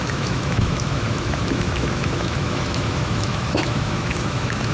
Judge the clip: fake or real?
fake